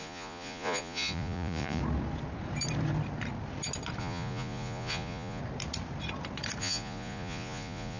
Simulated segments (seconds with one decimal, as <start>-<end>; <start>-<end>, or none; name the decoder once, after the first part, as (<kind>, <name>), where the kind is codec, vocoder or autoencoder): 0.0-1.8 (vocoder, Vocos); 4.0-5.4; 6.6-8.0